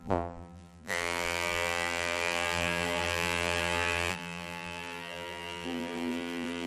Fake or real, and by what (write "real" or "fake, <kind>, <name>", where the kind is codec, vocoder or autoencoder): fake, vocoder, BigVGAN v2